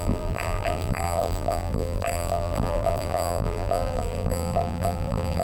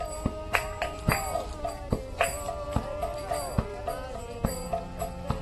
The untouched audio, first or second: second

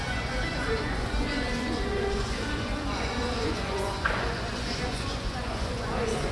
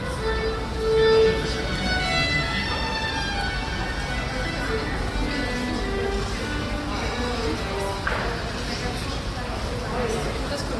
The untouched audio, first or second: second